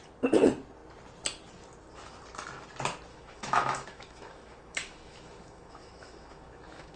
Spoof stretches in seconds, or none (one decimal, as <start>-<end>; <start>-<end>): 3.1-7.0